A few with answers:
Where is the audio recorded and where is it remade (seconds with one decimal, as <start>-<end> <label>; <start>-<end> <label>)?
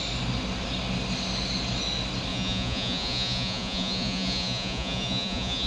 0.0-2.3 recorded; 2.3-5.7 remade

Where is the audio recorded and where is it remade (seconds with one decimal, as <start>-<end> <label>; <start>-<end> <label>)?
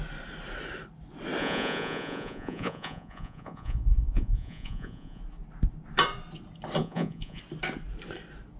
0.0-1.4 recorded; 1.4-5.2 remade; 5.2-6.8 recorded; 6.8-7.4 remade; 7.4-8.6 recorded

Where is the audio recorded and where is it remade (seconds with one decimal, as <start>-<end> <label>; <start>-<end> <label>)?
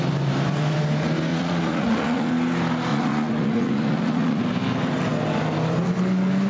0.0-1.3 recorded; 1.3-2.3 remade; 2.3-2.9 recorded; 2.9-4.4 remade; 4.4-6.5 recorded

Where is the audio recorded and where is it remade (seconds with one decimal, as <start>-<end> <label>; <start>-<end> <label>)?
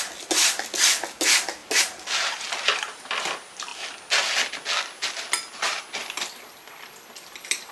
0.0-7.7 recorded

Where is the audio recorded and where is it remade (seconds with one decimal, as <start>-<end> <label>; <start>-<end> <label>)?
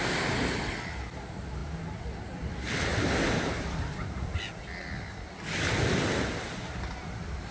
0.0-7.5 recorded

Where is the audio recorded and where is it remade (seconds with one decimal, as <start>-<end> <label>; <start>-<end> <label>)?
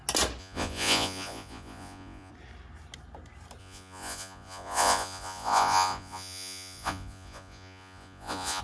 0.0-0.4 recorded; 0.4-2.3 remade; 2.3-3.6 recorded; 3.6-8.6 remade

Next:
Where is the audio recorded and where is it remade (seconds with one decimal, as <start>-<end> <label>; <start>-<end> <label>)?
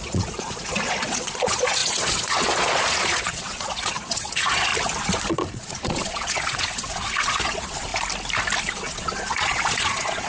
0.0-4.7 remade; 4.7-5.3 recorded; 5.3-7.9 remade; 7.9-8.6 recorded; 8.6-10.3 remade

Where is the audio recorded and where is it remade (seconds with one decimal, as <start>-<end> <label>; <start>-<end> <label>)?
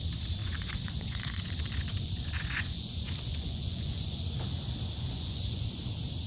0.0-0.4 recorded; 0.4-4.2 remade; 4.2-5.1 recorded; 5.1-5.8 remade; 5.8-6.3 recorded